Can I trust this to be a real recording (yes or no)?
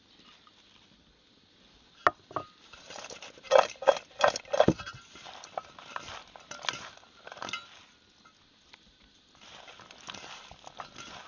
yes